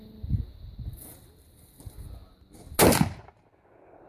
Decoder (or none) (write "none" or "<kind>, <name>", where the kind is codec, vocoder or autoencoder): none